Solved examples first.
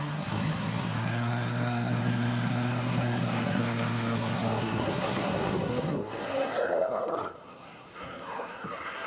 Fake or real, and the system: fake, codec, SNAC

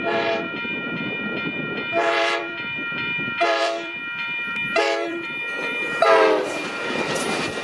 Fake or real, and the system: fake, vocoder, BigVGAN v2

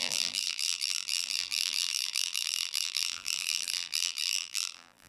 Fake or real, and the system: fake, vocoder, BigVGAN v2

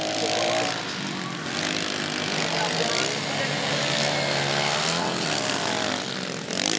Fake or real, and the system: real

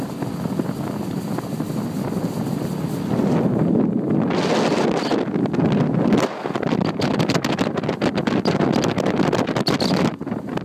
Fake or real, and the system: real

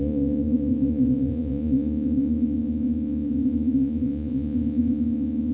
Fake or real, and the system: fake, vocoder, Vocos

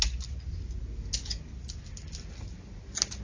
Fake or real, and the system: real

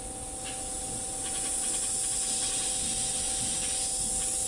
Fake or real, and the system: real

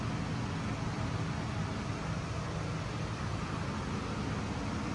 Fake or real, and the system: real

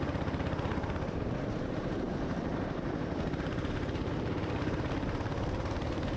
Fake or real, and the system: fake, vocoder, BigVGAN v2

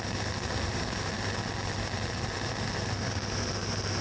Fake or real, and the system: real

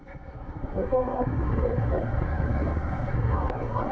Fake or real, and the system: fake, codec, SNAC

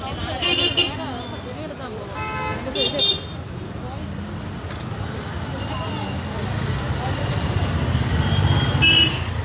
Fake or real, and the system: real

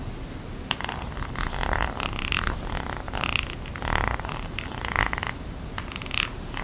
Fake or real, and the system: real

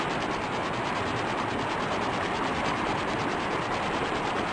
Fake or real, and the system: real